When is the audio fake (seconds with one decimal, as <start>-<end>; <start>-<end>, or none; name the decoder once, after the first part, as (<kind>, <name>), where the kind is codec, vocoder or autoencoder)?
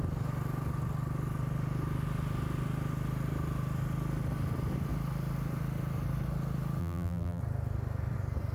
6.8-7.4 (vocoder, BigVGAN v2)